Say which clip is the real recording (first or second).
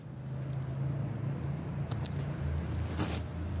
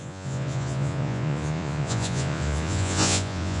first